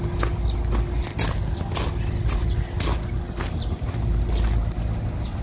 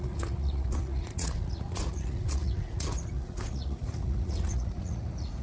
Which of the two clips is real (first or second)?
first